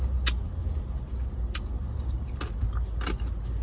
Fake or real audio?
real